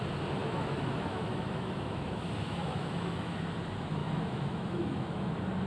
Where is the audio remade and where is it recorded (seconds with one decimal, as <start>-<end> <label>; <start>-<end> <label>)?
0.0-0.4 recorded; 0.4-3.4 remade; 3.4-4.0 recorded; 4.0-5.3 remade; 5.3-5.7 recorded